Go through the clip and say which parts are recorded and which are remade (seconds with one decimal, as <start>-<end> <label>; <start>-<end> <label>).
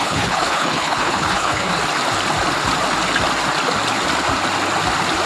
0.0-1.7 remade; 1.7-5.3 recorded